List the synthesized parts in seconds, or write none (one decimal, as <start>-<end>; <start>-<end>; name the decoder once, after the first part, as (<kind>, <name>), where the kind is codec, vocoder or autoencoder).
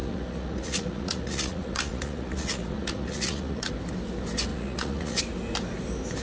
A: 0.0-3.7 (vocoder, Vocos); 4.5-5.2